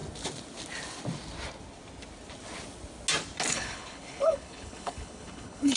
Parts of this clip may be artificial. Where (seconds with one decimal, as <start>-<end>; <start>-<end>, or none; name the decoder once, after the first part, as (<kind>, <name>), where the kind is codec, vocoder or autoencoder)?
3.5-5.8 (codec, HILCodec)